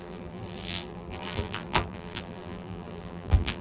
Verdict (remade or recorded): remade